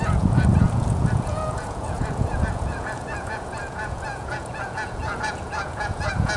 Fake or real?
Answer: fake